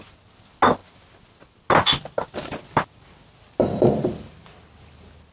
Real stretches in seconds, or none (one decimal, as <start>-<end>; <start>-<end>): 0.0-5.3

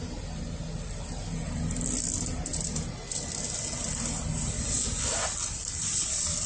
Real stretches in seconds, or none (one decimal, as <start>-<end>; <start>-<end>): 0.0-6.5

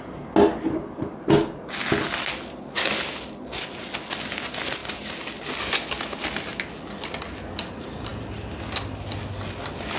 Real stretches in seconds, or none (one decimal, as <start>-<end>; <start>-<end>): 0.0-6.5; 7.6-10.0

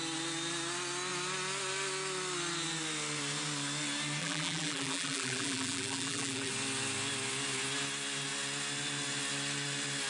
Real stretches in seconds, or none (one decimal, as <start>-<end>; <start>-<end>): 0.0-4.2; 6.5-10.1

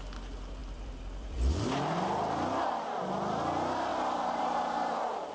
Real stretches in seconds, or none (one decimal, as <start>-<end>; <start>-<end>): 0.0-0.6; 1.8-3.9; 4.4-5.3